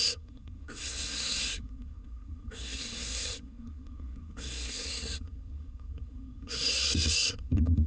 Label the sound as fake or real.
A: fake